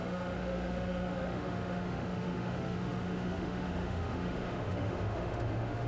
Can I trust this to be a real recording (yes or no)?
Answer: no